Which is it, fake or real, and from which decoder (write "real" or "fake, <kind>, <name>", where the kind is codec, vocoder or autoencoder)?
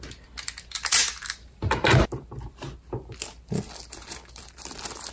real